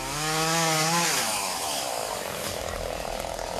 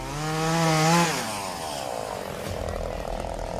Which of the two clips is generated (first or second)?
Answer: first